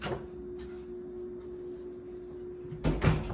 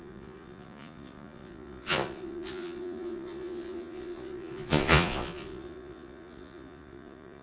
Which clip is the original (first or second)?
first